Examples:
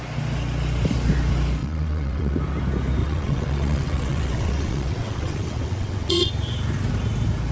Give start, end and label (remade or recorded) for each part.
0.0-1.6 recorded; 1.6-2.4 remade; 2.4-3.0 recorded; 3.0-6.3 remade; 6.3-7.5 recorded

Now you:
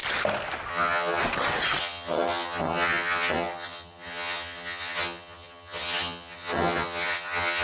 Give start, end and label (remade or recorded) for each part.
0.0-0.7 recorded; 0.7-1.2 remade; 1.2-1.8 recorded; 1.8-7.6 remade

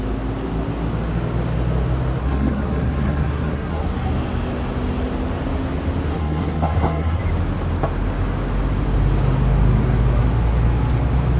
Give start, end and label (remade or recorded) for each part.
0.0-2.2 recorded; 2.2-3.9 remade; 3.9-6.1 recorded; 6.1-7.2 remade; 7.2-11.4 recorded

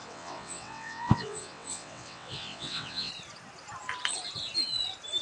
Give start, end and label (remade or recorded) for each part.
0.0-3.1 remade; 3.1-5.2 recorded

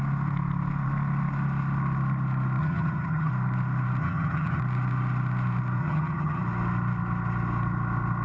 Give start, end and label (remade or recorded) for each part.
0.0-2.6 recorded; 2.6-3.3 remade; 3.3-4.0 recorded; 4.0-4.6 remade; 4.6-5.8 recorded; 5.8-6.4 remade; 6.4-8.2 recorded

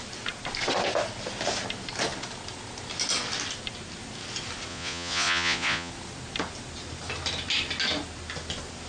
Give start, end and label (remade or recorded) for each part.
0.0-4.7 recorded; 4.7-5.9 remade; 5.9-8.9 recorded

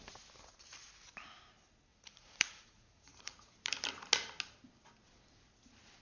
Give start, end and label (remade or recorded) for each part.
0.0-1.9 recorded; 1.9-3.5 remade; 3.5-6.0 recorded

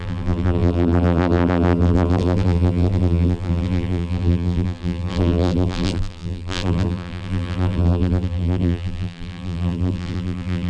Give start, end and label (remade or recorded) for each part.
0.0-10.7 remade